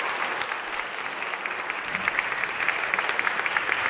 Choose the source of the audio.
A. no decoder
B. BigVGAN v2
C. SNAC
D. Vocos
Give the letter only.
A